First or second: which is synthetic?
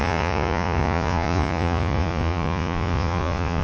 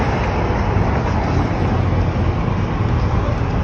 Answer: first